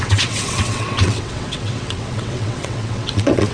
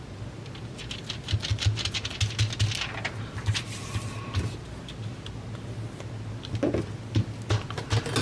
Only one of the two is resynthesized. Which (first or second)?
first